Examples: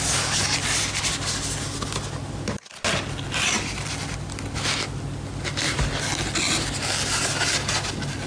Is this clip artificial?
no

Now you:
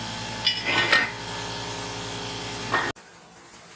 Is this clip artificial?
no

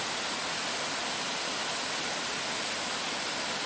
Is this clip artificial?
no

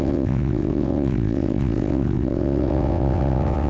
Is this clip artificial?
yes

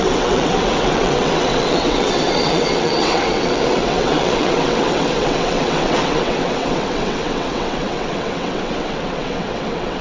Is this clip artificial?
yes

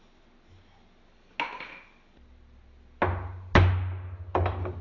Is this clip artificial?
no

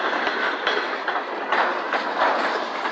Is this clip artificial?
no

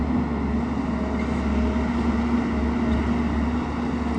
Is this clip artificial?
no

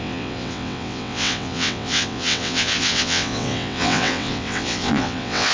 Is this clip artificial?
yes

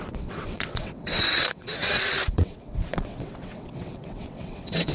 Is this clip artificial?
yes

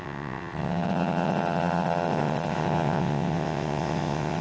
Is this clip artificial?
yes